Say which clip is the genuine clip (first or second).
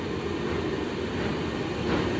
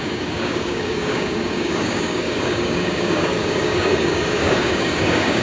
first